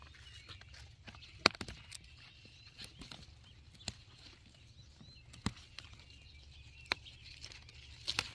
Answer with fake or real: real